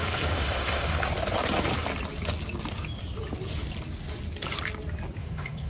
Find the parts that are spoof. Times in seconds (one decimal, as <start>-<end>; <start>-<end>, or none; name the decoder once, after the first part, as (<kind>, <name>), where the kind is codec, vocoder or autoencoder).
0.0-0.9 (autoencoder, DAC-VAE); 5.2-5.7